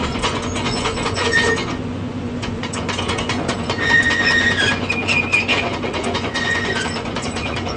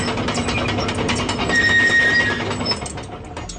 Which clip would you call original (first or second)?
second